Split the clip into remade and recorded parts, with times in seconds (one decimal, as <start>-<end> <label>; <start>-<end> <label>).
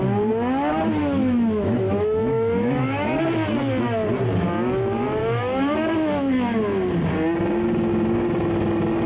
0.0-1.0 recorded; 1.0-3.2 remade; 3.2-5.2 recorded; 5.2-6.6 remade; 6.6-9.1 recorded